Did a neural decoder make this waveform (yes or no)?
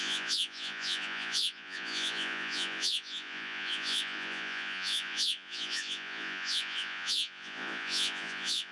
yes